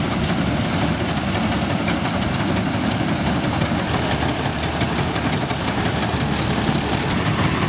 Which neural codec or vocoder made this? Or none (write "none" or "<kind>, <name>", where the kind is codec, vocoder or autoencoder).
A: none